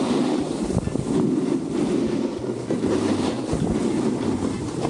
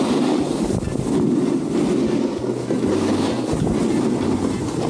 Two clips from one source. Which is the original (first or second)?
second